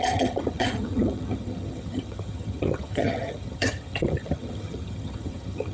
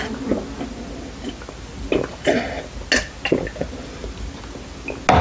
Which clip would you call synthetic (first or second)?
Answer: first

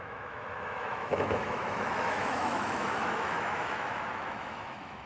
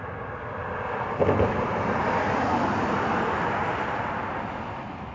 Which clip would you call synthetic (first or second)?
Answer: first